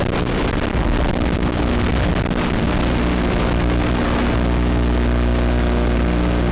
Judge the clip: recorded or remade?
recorded